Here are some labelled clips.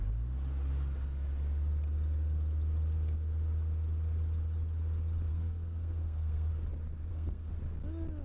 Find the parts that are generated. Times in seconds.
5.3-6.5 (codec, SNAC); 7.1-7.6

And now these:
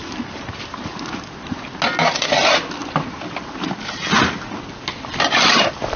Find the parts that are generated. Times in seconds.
none

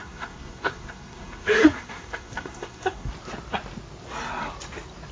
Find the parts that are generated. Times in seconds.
0.0-3.1 (codec, SNAC)

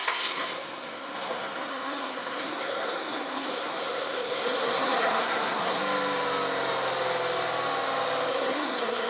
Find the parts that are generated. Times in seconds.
0.0-5.8 (codec, SNAC); 8.3-9.1